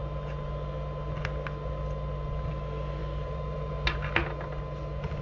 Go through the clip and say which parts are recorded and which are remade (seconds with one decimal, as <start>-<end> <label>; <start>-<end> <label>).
0.0-3.0 recorded; 3.0-3.7 remade; 3.7-5.2 recorded